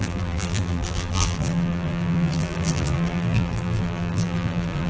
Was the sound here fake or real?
fake